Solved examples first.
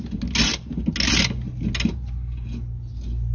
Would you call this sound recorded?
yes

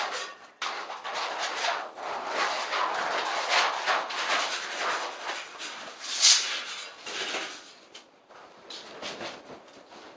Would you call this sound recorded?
yes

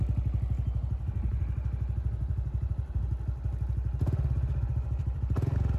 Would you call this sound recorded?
yes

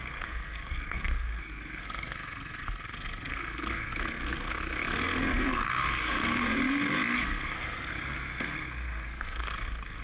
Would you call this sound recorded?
no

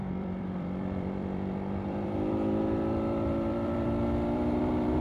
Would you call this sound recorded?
no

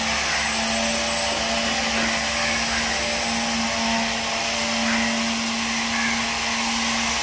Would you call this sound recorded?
yes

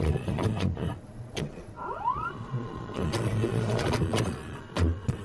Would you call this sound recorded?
no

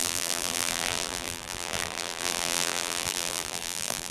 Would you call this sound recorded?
no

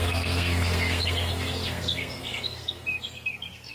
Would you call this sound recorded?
no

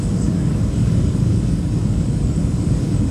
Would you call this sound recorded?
no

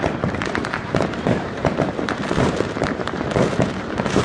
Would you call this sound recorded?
no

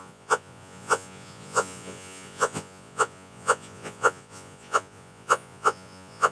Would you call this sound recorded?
no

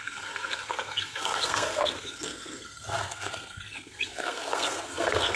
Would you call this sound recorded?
no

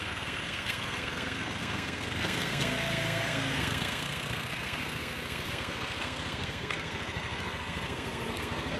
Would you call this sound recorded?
no